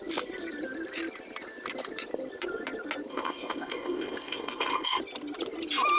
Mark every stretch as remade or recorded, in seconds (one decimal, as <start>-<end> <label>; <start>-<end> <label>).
0.0-3.1 recorded; 3.1-5.0 remade; 5.0-6.0 recorded